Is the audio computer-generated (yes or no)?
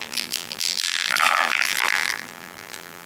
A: yes